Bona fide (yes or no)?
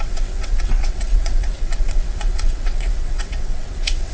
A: no